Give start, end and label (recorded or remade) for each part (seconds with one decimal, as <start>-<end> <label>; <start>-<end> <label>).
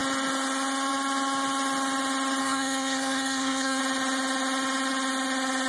0.0-2.4 recorded; 2.4-3.8 remade; 3.8-5.7 recorded